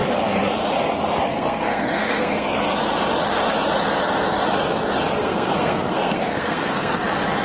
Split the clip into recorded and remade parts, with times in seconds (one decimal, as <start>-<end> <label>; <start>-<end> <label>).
0.0-1.3 recorded; 1.3-2.6 remade; 2.6-5.2 recorded; 5.2-7.0 remade; 7.0-7.4 recorded